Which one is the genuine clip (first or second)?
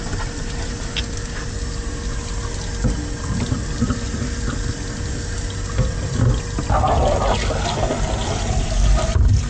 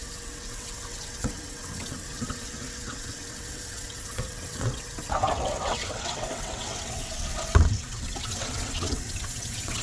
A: first